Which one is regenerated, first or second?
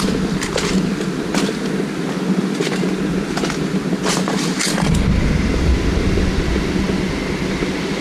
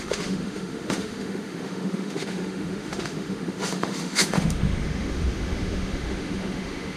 second